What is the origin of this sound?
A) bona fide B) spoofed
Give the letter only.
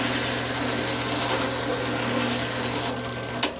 A